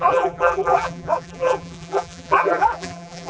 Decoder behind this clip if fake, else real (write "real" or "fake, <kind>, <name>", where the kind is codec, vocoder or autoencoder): fake, vocoder, BigVGAN v2